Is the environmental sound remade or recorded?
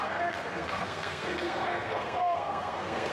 remade